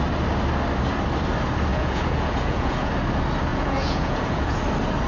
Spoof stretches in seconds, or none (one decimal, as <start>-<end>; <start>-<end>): 1.7-2.9; 3.5-4.6